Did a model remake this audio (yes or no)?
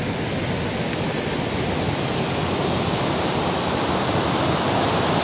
yes